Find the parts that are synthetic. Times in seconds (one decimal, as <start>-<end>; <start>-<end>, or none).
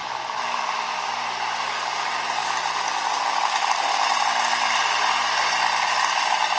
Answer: 0.0-1.1